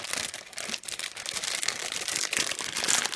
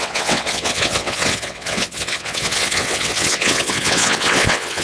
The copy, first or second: second